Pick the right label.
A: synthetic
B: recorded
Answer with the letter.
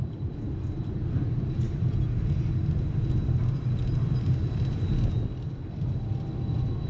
B